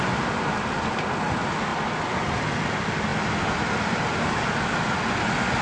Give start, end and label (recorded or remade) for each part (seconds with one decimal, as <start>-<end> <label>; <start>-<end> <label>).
0.0-5.6 recorded